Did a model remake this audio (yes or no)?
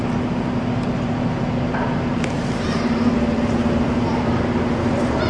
no